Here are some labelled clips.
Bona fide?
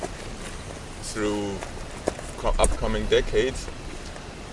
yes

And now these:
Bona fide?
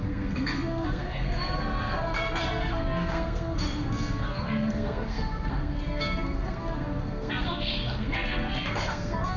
no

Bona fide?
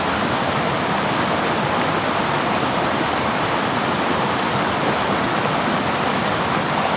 yes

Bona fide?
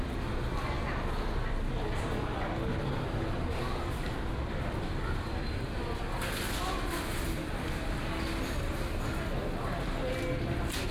yes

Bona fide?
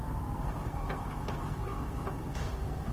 no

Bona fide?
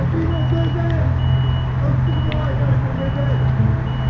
yes